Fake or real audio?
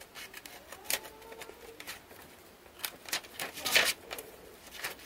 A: real